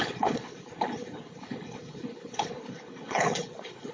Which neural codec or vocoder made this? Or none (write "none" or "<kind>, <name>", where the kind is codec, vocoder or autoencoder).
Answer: codec, HILCodec